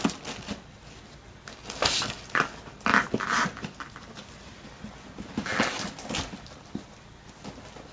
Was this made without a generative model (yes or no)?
yes